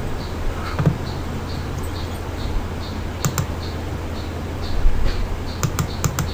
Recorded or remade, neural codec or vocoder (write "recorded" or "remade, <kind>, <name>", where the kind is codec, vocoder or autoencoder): recorded